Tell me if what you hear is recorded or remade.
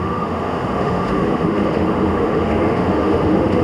remade